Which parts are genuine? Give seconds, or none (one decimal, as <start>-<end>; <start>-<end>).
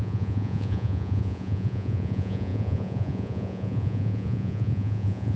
none